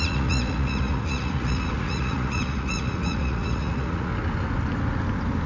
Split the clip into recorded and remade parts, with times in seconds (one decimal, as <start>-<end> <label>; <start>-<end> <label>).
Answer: 0.0-4.1 remade; 4.1-5.5 recorded